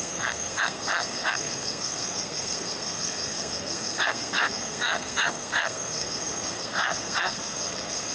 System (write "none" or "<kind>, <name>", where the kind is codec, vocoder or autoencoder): codec, SNAC